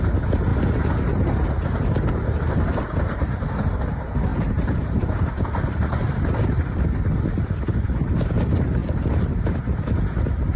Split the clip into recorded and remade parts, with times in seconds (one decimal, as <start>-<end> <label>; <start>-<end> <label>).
0.0-0.5 remade; 0.5-1.1 recorded; 1.1-10.6 remade